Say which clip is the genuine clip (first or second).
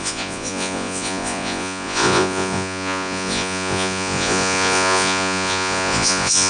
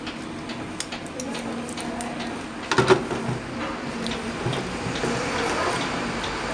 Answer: second